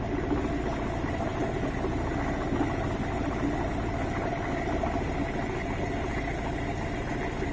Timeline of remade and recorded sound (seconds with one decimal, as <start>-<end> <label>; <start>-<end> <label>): 0.0-7.5 recorded